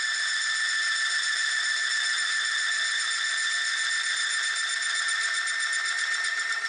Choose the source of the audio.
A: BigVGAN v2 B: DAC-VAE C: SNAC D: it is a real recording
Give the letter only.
A